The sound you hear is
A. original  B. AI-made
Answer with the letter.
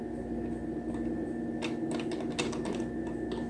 A